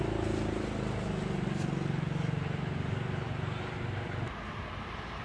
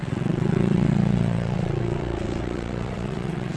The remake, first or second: second